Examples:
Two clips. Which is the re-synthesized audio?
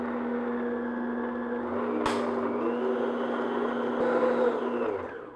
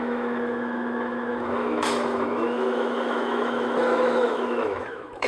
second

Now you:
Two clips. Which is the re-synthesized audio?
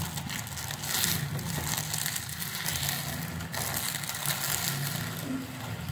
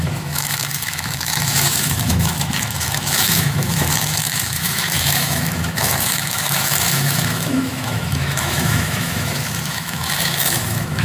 second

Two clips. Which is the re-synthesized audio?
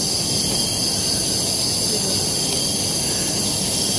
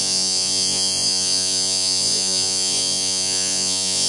second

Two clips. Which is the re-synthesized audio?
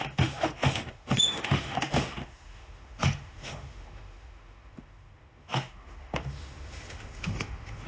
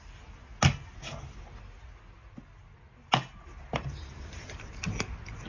first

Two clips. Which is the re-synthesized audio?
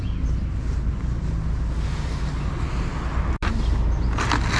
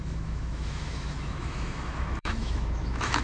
second